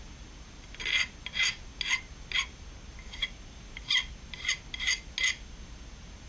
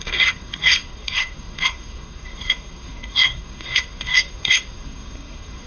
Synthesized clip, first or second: second